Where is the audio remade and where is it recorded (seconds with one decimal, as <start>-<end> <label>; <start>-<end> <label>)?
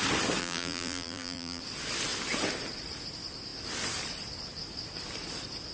0.0-0.4 recorded; 0.4-1.6 remade; 1.6-5.7 recorded